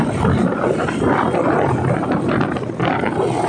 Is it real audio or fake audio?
real